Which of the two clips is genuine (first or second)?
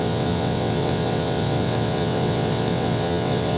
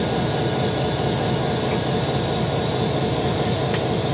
second